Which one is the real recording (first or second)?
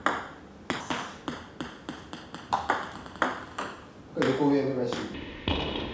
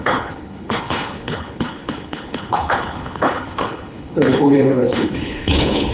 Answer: first